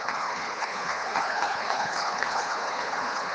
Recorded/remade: remade